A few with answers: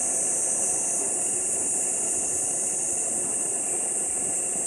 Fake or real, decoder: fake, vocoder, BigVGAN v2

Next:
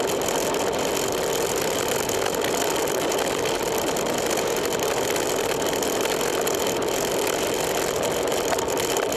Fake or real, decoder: real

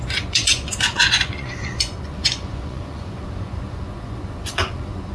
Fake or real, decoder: fake, vocoder, Vocos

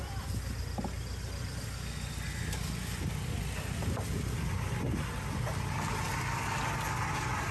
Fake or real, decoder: real